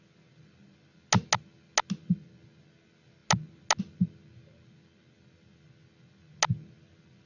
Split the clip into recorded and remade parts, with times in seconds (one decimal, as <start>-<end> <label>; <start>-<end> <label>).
0.0-7.3 recorded